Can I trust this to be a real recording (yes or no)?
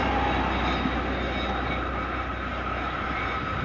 yes